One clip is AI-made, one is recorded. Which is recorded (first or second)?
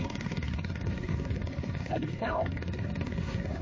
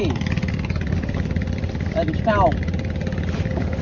second